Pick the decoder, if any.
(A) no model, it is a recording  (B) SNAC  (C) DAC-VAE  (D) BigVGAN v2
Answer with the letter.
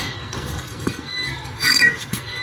B